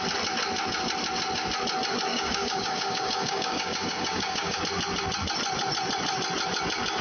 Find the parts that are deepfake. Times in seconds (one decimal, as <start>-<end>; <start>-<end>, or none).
2.1-4.6